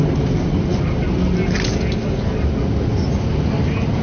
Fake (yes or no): no